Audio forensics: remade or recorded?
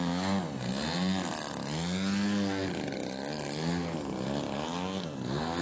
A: recorded